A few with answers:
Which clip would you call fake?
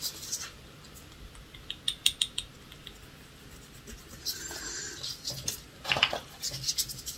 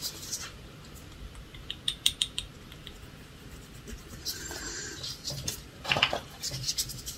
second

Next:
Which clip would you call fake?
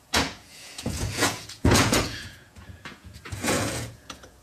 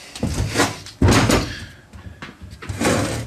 first